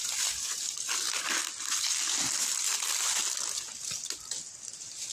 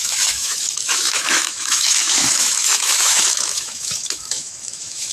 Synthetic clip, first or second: second